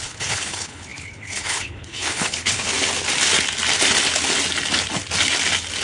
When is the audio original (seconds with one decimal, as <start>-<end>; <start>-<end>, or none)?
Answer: 2.7-5.8

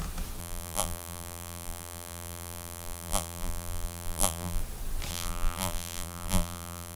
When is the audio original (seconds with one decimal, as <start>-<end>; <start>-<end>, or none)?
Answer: 0.0-0.4; 4.6-5.1